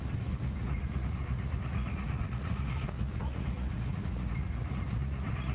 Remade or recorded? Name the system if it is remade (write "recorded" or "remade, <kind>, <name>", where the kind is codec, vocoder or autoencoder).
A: remade, vocoder, Vocos